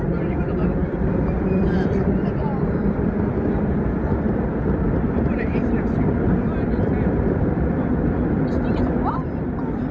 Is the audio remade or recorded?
remade